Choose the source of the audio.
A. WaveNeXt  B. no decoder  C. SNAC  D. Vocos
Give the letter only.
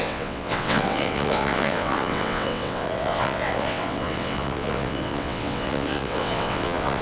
A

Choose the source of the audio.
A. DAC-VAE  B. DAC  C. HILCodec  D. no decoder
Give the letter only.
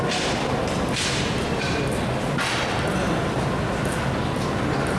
D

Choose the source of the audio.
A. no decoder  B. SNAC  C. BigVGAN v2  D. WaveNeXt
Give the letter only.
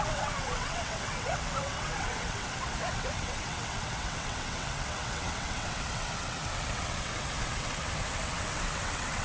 D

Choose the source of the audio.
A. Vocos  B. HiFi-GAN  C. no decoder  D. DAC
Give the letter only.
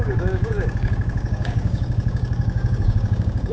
D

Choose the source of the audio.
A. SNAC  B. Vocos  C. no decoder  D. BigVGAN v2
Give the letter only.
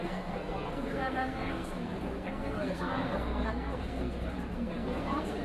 A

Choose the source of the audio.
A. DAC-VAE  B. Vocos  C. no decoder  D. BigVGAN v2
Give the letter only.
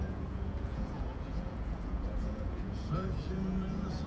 B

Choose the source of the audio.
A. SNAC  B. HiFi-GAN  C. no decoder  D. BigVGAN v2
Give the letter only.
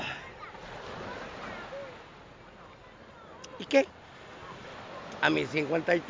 C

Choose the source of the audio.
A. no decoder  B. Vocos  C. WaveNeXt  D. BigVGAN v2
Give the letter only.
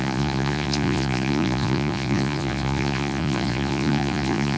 B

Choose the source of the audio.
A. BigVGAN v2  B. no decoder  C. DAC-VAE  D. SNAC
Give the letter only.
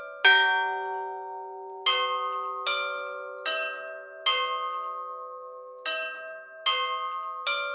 B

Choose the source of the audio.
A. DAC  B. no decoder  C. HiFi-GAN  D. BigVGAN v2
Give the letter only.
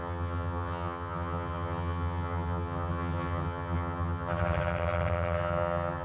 C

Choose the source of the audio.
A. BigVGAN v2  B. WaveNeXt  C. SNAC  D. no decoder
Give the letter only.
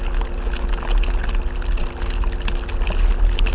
D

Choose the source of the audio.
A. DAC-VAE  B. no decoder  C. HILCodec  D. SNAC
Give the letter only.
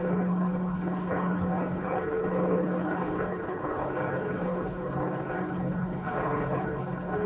C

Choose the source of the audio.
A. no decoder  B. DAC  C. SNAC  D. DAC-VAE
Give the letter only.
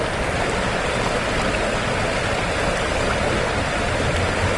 A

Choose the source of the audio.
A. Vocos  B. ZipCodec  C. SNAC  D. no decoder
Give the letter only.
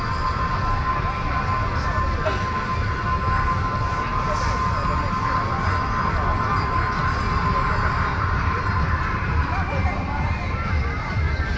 D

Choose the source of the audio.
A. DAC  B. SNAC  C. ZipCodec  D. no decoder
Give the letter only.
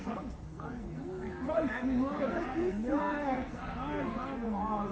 B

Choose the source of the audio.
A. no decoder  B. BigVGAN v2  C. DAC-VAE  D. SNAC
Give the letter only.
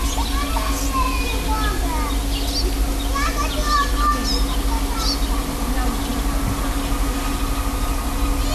A